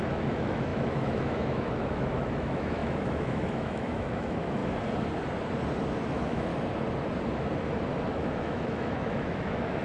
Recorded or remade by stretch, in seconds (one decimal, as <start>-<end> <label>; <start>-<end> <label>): 0.0-4.6 remade; 4.6-6.1 recorded; 6.1-6.5 remade; 6.5-8.1 recorded; 8.1-9.8 remade